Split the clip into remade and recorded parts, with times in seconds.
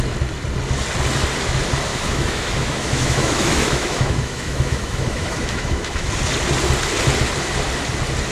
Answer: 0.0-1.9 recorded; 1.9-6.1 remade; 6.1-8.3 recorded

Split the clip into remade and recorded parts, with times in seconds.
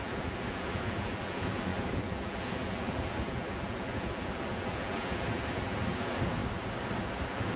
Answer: 0.0-6.4 remade; 6.4-7.0 recorded; 7.0-7.6 remade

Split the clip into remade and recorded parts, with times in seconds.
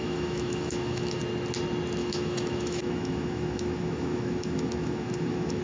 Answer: 0.0-1.2 remade; 1.2-2.0 recorded; 2.0-5.6 remade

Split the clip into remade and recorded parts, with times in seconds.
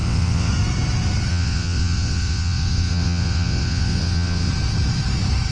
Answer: 0.0-0.5 remade; 0.5-1.3 recorded; 1.3-4.5 remade; 4.5-5.5 recorded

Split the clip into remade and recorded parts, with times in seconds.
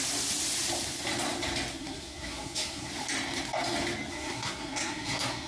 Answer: 0.0-1.8 recorded; 1.8-2.9 remade; 2.9-4.1 recorded; 4.1-5.5 remade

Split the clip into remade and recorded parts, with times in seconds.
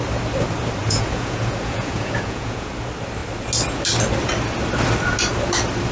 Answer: 0.0-0.8 recorded; 0.8-2.7 remade; 2.7-5.9 recorded